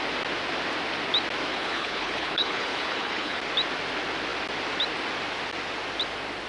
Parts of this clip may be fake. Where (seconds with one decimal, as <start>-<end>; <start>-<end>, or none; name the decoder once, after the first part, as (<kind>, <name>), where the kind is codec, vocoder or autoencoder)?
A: 1.5-3.4 (codec, HILCodec)

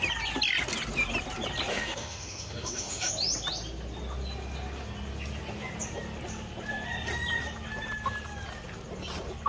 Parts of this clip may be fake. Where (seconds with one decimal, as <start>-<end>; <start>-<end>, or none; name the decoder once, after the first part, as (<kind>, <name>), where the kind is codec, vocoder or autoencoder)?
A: 1.7-3.1 (autoencoder, DAC-VAE)

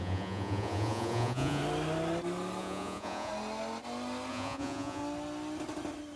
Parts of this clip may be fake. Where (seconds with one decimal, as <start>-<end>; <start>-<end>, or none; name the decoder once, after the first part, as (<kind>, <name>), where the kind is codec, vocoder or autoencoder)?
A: 0.0-1.6 (vocoder, Vocos); 2.6-3.3; 4.3-5.0

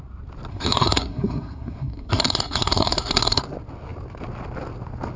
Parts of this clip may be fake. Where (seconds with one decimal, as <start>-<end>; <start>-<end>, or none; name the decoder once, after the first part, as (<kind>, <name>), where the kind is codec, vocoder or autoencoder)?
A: 0.5-3.4 (codec, SNAC)